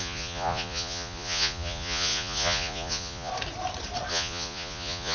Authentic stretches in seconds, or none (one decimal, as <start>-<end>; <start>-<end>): 3.3-4.1